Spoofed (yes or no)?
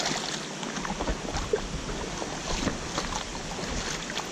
no